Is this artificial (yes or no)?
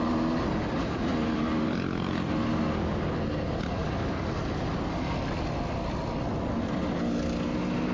no